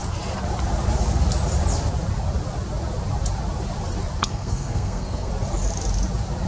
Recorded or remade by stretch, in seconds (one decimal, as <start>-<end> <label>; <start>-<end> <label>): 0.0-4.2 recorded; 4.2-5.3 remade; 5.3-6.5 recorded

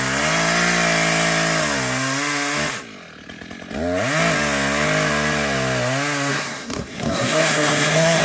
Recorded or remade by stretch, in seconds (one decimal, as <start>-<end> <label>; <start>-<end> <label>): 0.0-6.3 recorded; 6.3-8.2 remade

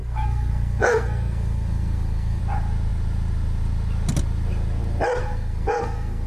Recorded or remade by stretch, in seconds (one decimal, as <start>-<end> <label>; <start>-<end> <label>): 0.0-2.4 remade; 2.4-5.2 recorded; 5.2-6.3 remade